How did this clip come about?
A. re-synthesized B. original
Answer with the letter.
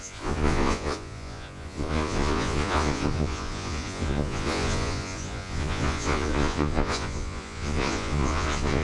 A